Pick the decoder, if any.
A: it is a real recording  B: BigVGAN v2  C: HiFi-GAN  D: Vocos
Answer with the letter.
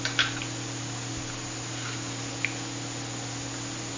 A